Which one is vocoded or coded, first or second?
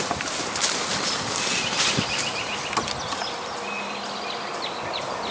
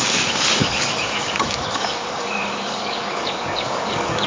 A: second